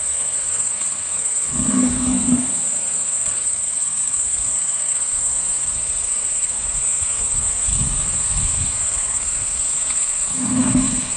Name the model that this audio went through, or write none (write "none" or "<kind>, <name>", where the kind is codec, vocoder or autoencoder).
codec, SNAC